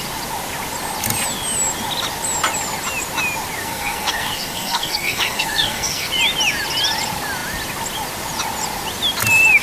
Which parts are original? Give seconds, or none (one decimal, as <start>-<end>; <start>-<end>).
0.0-3.6; 6.1-9.6